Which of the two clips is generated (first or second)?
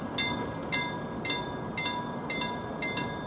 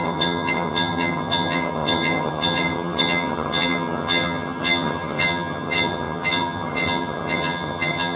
second